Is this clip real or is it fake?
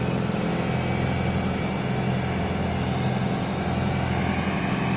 real